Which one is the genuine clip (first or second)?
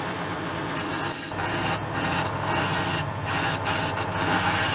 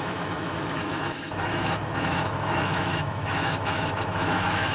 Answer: first